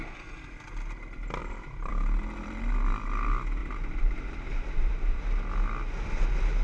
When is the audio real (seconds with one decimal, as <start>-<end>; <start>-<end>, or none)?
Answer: 0.0-1.4; 1.9-3.6; 5.2-6.6

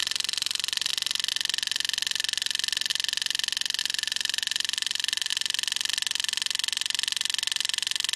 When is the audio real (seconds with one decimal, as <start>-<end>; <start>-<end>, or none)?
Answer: 0.9-3.8; 5.3-8.2

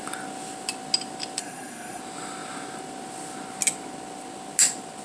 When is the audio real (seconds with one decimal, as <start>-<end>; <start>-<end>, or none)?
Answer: 0.0-1.4; 2.0-5.0